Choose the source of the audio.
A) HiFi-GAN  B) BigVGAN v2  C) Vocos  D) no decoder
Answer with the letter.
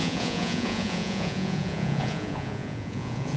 C